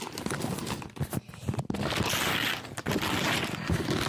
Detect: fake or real real